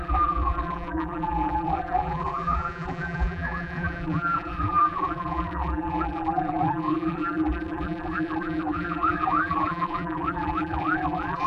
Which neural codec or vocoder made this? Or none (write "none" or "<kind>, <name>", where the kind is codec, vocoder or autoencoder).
vocoder, BigVGAN v2